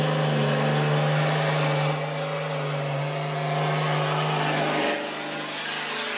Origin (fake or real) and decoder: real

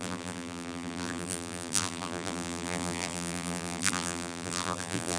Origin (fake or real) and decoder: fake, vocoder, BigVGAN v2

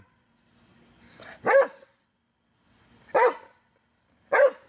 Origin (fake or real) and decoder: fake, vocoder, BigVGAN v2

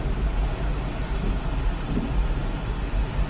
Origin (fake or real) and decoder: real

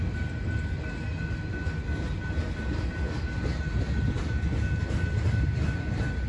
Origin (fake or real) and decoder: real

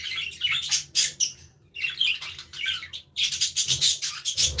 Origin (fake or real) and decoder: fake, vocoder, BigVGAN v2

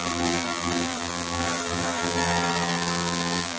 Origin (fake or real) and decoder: fake, vocoder, BigVGAN v2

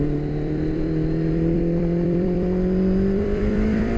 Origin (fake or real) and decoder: fake, vocoder, BigVGAN v2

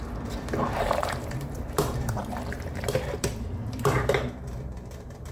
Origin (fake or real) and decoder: fake, vocoder, BigVGAN v2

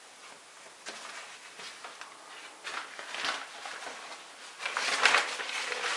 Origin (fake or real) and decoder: real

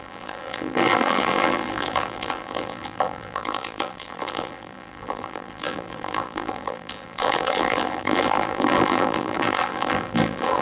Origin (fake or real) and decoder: fake, vocoder, BigVGAN v2